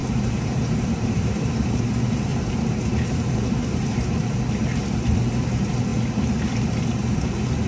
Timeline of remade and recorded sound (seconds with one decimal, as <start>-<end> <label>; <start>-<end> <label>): 0.0-1.9 remade; 1.9-2.3 recorded; 2.3-4.7 remade; 4.7-7.7 recorded